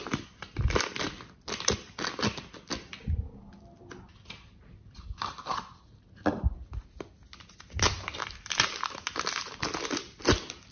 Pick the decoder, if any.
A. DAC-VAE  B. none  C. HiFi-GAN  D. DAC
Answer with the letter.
B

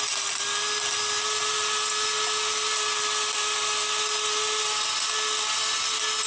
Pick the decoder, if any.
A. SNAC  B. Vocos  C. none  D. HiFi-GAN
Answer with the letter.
C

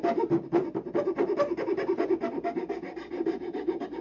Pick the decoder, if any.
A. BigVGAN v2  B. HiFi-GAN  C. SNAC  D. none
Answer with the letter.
D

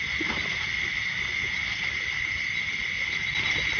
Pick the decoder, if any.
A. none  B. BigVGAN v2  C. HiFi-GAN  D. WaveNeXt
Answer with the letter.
A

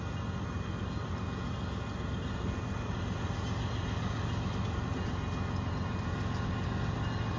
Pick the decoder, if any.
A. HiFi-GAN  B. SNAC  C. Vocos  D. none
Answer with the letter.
D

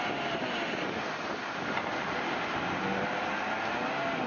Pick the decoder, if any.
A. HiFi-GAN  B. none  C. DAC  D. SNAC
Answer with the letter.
B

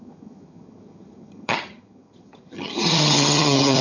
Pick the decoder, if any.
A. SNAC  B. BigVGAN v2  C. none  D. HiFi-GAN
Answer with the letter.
D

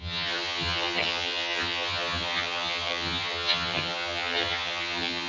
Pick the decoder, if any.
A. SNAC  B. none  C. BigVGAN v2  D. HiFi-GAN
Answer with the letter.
D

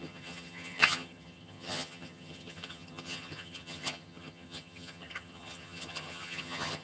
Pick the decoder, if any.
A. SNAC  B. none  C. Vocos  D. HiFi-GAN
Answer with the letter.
D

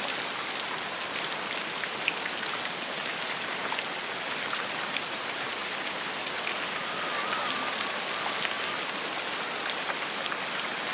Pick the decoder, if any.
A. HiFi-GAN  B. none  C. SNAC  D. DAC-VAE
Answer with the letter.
B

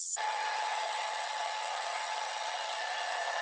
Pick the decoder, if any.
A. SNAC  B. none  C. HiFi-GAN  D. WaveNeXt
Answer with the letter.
C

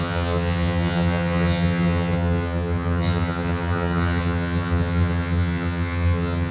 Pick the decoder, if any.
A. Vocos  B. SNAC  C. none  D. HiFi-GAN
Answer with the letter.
D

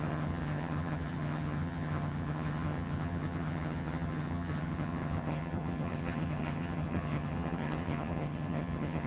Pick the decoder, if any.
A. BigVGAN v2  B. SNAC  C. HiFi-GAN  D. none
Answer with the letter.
C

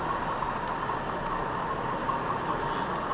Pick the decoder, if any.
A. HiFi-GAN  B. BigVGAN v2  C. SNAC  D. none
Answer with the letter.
D